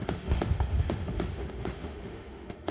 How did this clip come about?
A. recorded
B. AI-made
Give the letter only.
B